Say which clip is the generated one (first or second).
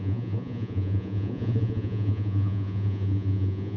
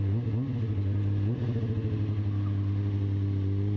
first